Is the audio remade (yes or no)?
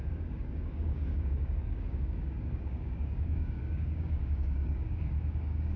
yes